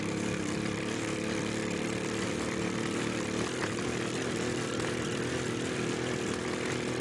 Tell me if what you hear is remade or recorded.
remade